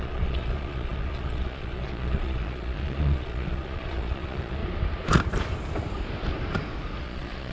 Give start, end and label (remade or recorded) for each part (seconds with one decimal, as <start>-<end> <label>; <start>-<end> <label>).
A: 0.0-4.6 remade; 4.6-7.0 recorded; 7.0-7.5 remade